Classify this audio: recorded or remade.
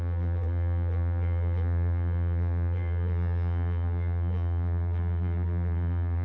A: remade